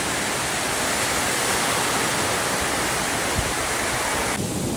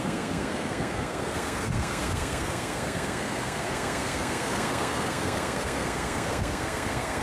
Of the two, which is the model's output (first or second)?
second